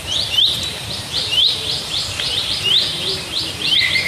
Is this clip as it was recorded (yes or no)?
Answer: no